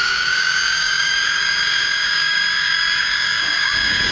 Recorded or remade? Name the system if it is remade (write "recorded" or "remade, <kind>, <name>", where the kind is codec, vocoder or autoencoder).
remade, codec, DAC